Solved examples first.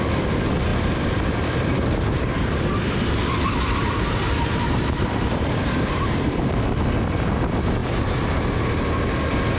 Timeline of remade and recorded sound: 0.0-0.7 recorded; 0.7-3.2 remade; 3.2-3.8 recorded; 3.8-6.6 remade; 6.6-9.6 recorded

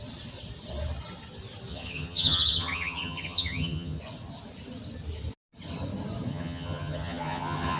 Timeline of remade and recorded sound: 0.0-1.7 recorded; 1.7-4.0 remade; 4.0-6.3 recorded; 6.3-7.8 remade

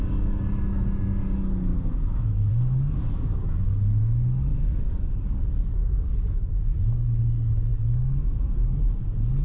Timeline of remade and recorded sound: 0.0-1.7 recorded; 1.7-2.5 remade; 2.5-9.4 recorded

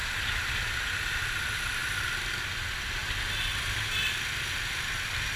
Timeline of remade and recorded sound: 0.0-0.5 remade; 0.5-5.4 recorded

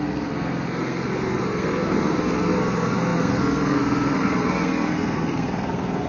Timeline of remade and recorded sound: 0.0-6.1 remade